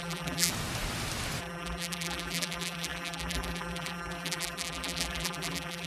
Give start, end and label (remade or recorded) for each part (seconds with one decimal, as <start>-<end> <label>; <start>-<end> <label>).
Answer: 0.0-0.5 remade; 0.5-1.4 recorded; 1.4-5.9 remade